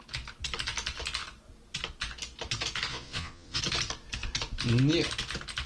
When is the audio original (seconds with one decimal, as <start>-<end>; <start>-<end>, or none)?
0.0-2.9; 3.6-5.7